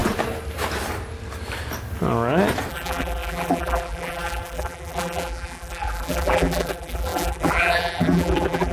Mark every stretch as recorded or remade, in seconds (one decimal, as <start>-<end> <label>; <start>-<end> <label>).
0.0-2.7 recorded; 2.7-8.7 remade

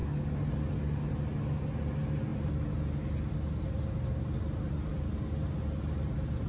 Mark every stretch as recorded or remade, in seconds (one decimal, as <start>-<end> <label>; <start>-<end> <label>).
0.0-6.5 recorded

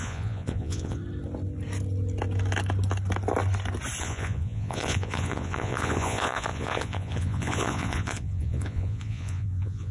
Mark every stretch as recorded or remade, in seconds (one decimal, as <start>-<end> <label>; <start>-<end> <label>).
0.0-1.0 remade; 1.0-4.0 recorded; 4.0-9.9 remade

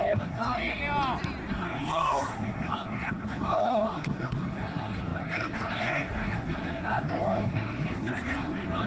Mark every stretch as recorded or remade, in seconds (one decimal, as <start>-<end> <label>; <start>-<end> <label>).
0.0-0.8 remade; 0.8-1.5 recorded; 1.5-8.9 remade

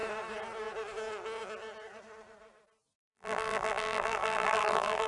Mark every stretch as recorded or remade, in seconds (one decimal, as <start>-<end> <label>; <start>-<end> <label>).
0.0-3.0 recorded; 3.0-5.1 remade

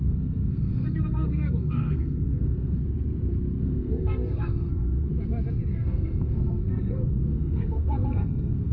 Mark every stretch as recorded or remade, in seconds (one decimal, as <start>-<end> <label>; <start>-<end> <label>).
0.0-2.8 remade; 2.8-3.6 recorded; 3.6-5.1 remade; 5.1-5.7 recorded; 5.7-8.7 remade

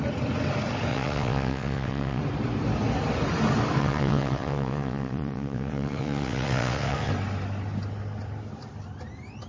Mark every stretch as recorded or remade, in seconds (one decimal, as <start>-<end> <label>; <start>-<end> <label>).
0.0-0.9 recorded; 0.9-2.2 remade; 2.2-3.8 recorded; 3.8-7.1 remade; 7.1-9.5 recorded

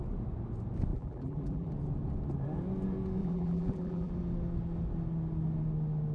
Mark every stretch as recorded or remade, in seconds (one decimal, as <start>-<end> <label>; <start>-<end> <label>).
0.0-0.9 recorded; 0.9-1.7 remade; 1.7-3.2 recorded; 3.2-4.1 remade; 4.1-6.1 recorded